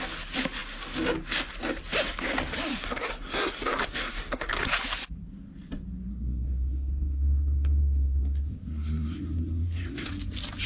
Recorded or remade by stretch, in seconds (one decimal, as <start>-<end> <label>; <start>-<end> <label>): 0.0-2.7 recorded; 2.7-4.6 remade; 4.6-6.1 recorded; 6.1-10.1 remade; 10.1-10.7 recorded